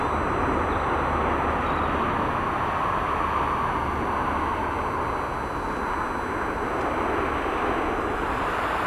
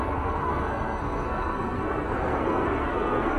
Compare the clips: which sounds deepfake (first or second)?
second